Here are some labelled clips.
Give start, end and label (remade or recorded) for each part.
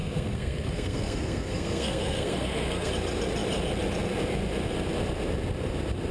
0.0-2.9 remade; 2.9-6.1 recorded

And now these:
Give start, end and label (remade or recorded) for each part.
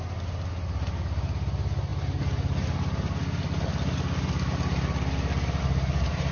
0.0-6.3 recorded